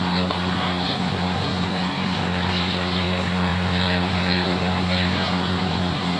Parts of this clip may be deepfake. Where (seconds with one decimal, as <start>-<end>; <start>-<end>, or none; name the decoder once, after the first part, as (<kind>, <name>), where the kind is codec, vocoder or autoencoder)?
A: 0.0-6.2 (codec, SNAC)